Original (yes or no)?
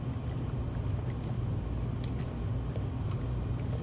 yes